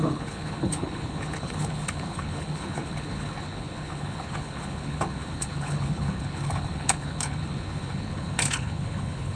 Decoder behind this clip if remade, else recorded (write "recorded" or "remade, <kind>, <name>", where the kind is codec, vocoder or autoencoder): remade, codec, HILCodec